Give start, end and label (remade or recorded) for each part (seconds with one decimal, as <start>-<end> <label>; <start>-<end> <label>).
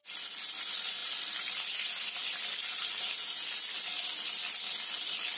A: 0.0-5.4 recorded